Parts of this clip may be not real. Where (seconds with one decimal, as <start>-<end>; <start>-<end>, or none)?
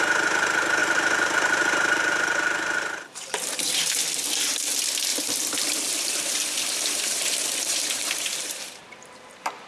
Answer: 0.8-4.0; 5.1-9.7